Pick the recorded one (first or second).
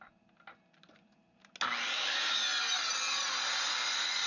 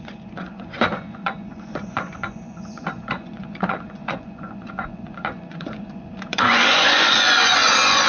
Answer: first